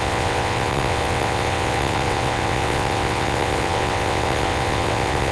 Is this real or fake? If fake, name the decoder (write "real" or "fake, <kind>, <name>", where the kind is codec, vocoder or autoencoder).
fake, vocoder, WaveNeXt